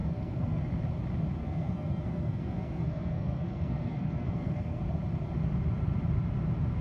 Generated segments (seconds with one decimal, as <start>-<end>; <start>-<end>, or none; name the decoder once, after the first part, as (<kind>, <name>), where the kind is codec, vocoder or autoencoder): 0.0-0.6 (codec, SNAC); 1.4-4.8